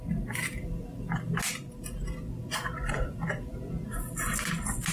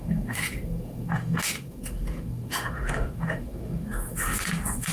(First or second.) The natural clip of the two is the first